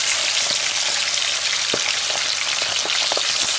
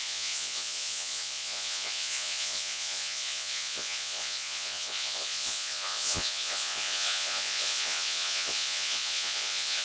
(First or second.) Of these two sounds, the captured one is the first